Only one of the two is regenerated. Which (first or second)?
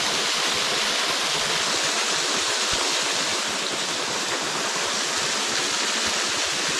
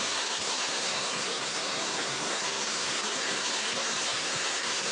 second